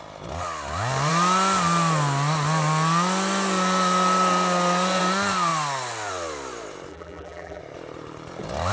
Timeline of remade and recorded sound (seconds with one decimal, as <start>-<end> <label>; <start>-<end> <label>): 0.0-6.9 recorded; 6.9-7.6 remade; 7.6-8.7 recorded